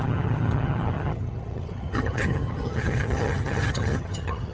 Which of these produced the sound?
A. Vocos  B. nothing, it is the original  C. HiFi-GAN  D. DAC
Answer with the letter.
C